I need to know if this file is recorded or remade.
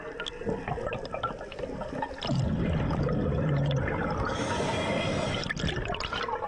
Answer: recorded